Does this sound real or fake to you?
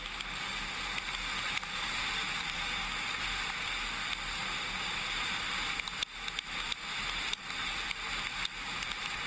real